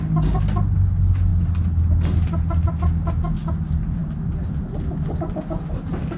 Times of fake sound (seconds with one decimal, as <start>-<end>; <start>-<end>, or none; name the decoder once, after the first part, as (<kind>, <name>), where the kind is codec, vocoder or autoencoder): none